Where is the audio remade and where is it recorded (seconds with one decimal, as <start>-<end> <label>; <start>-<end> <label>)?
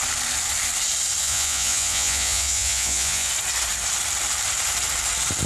0.0-1.2 recorded; 1.2-3.3 remade; 3.3-5.5 recorded